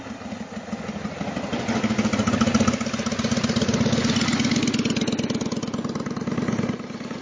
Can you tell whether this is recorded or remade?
recorded